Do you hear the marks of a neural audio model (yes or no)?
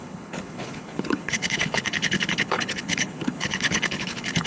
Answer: yes